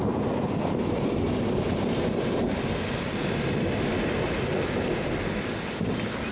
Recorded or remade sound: recorded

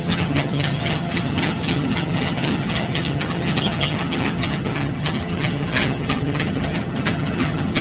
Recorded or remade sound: remade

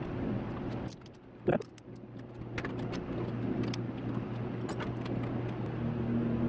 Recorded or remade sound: recorded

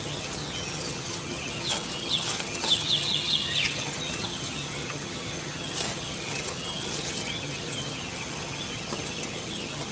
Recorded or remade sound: remade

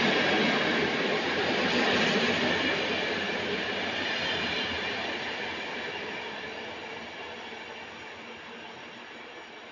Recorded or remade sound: recorded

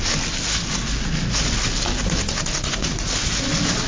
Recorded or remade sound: recorded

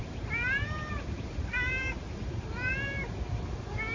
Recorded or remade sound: recorded